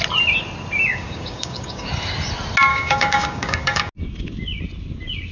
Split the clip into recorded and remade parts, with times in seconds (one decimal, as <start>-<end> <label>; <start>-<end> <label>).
0.0-0.9 recorded; 0.9-1.9 remade; 1.9-2.7 recorded; 2.7-3.9 remade; 3.9-5.3 recorded

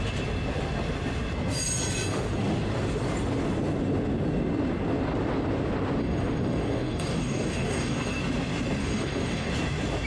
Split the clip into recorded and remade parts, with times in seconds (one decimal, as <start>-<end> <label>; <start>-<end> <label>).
0.0-6.0 recorded; 6.0-8.2 remade; 8.2-8.8 recorded; 8.8-9.5 remade; 9.5-10.1 recorded

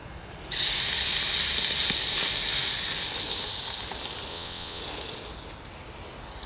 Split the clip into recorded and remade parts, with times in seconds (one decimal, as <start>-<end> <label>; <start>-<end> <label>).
0.0-4.3 recorded; 4.3-4.8 remade; 4.8-6.5 recorded

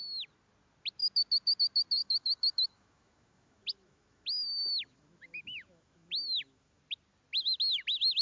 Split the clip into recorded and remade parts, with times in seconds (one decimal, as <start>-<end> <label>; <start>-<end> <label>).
0.0-2.0 recorded; 2.0-6.8 remade; 6.8-8.2 recorded

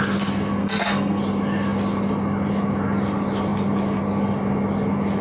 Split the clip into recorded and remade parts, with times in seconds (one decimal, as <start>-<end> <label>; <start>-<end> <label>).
0.0-0.6 recorded; 0.6-1.2 remade; 1.2-5.2 recorded

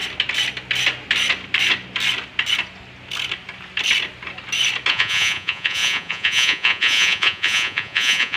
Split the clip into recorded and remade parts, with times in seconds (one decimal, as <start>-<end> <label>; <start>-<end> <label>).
0.0-4.9 recorded; 4.9-8.4 remade